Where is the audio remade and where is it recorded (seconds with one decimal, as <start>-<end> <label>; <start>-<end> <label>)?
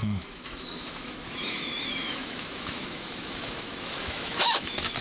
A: 0.0-5.0 remade